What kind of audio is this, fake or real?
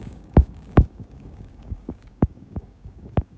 fake